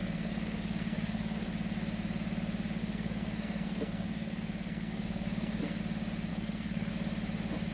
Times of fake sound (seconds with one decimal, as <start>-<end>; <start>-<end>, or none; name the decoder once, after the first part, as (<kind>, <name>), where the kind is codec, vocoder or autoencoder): 0.0-1.5 (codec, SNAC); 2.8-5.8; 6.3-6.9